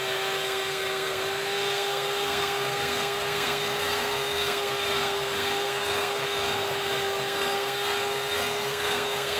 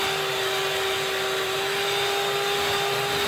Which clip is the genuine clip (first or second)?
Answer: second